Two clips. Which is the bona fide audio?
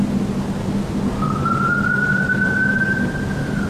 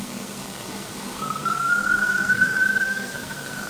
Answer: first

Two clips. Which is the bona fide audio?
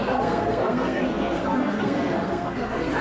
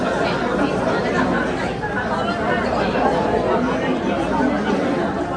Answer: second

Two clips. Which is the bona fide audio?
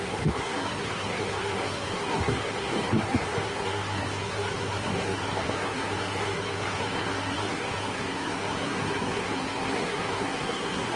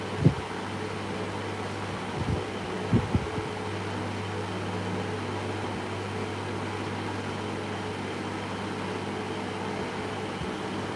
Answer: second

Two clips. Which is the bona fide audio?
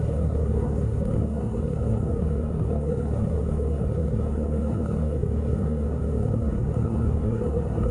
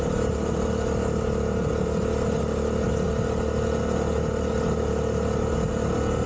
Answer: second